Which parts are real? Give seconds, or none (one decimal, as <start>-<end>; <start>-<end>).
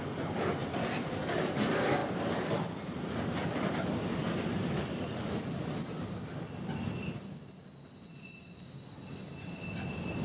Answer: 0.0-10.2